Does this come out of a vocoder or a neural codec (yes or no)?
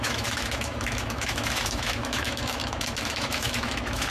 yes